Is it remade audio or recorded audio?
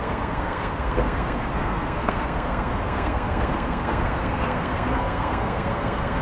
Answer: remade